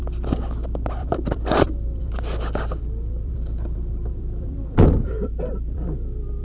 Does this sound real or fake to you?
fake